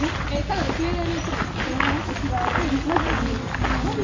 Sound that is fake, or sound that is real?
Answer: real